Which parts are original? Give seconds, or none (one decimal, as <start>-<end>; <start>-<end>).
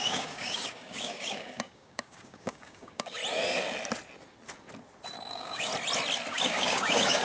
3.2-5.3; 5.7-6.3